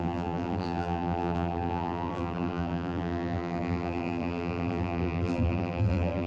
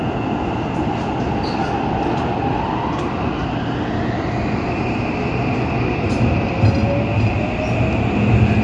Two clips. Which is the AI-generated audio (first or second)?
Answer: first